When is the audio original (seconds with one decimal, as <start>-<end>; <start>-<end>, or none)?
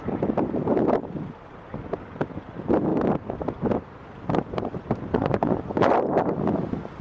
0.0-5.1; 5.9-7.0